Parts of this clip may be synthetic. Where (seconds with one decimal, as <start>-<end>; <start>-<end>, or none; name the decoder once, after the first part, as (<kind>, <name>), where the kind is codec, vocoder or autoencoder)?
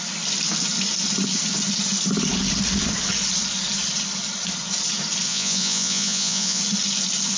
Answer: 5.3-6.6 (vocoder, Vocos)